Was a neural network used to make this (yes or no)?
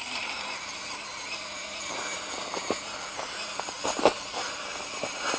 no